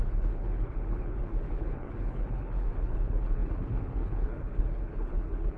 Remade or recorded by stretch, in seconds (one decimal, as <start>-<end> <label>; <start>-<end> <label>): 0.0-5.6 remade